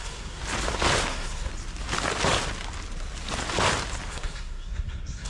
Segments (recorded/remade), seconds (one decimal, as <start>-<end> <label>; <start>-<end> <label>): 0.0-0.4 remade; 0.4-1.1 recorded; 1.1-1.5 remade; 1.5-4.1 recorded; 4.1-5.3 remade